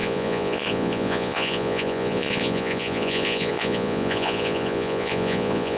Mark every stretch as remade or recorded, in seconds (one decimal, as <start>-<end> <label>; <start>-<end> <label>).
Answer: 0.0-5.8 remade